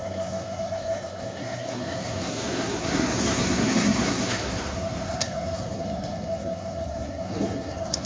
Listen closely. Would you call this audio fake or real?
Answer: fake